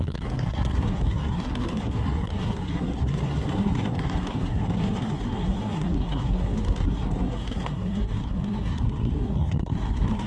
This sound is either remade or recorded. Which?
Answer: remade